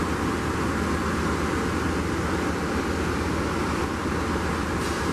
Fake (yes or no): no